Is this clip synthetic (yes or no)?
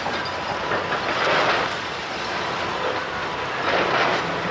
no